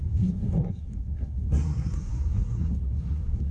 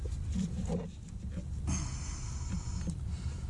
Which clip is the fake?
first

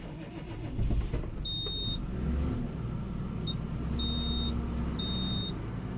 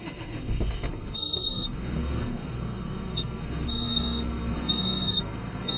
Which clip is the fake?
second